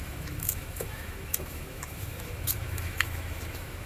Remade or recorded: remade